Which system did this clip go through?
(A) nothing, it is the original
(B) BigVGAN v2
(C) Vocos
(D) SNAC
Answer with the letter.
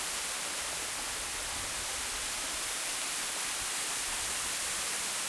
A